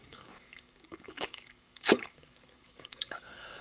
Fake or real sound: fake